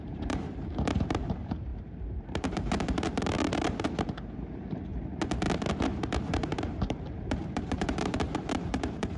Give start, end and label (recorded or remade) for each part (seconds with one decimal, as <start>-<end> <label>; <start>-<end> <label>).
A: 0.0-4.9 remade; 4.9-5.8 recorded; 5.8-9.2 remade